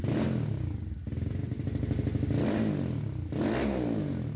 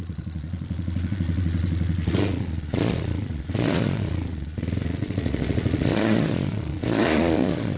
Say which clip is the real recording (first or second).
first